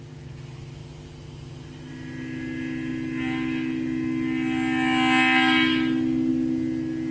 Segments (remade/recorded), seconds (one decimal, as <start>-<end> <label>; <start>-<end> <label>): 0.0-7.1 recorded